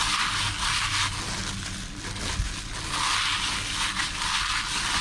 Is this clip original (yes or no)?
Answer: yes